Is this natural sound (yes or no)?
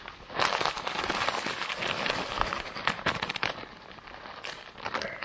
yes